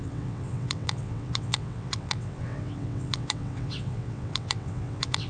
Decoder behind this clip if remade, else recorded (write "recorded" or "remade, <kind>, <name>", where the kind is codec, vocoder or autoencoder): remade, vocoder, WaveNeXt